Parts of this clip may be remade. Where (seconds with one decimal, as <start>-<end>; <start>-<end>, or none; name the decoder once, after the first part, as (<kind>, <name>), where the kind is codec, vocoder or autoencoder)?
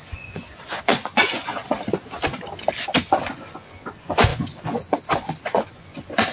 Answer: 0.0-1.6 (vocoder, Vocos); 3.1-6.3